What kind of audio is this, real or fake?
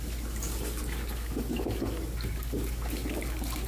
fake